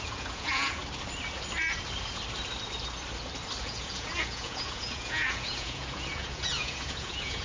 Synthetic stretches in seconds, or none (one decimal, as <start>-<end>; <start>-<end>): 0.0-0.8; 3.6-7.4